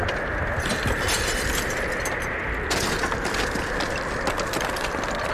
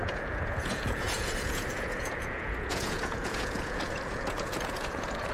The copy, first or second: second